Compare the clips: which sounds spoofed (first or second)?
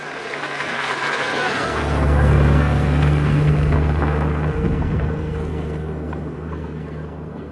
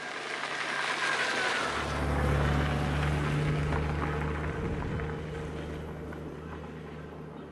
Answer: first